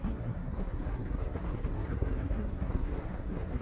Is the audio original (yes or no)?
no